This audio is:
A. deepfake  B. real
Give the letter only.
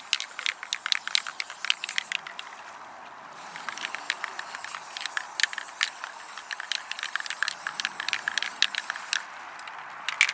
B